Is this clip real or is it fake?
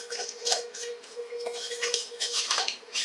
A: fake